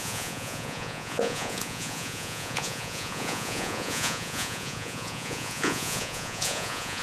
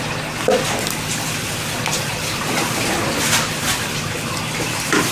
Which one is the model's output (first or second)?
first